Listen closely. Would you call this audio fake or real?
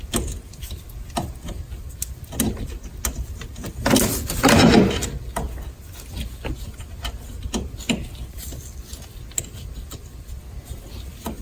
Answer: real